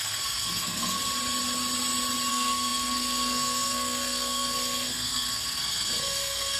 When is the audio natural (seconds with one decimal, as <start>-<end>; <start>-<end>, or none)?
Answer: 1.0-2.3